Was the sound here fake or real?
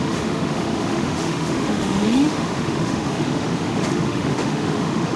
fake